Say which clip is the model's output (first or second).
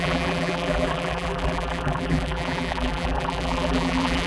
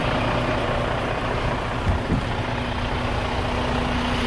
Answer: first